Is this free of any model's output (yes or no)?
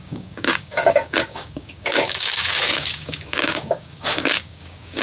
no